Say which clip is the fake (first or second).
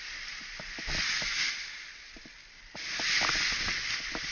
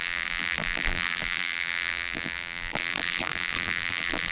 second